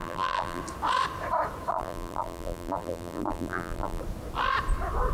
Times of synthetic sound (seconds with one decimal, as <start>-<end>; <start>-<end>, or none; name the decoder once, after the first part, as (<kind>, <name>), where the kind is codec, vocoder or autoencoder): 0.0-0.6 (vocoder, BigVGAN v2); 1.7-4.0

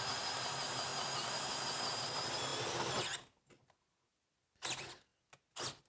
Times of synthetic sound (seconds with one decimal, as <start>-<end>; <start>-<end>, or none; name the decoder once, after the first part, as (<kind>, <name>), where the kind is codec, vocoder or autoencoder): none

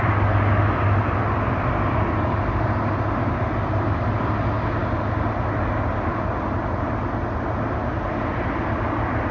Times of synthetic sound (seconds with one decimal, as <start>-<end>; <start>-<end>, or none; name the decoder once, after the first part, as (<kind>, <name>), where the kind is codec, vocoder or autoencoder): none

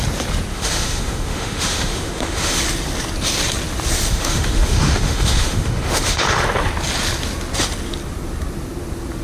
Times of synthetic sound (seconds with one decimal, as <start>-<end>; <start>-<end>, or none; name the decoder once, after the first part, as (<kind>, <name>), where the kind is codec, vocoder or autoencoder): 0.5-2.6 (autoencoder, DAC-VAE); 4.1-6.2

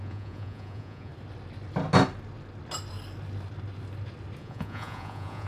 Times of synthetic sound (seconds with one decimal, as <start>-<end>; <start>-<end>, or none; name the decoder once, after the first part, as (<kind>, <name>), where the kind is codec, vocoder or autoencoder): 0.0-1.1 (vocoder, Vocos); 4.4-5.5

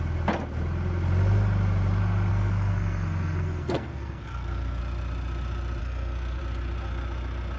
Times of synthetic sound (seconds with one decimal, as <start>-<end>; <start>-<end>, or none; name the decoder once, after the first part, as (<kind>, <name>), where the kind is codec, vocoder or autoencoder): 2.3-4.8 (codec, SNAC); 5.8-6.4

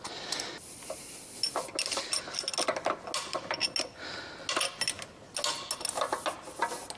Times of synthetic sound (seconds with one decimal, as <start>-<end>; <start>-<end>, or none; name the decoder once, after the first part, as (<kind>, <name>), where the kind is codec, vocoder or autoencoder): none